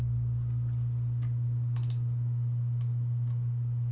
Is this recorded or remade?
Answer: recorded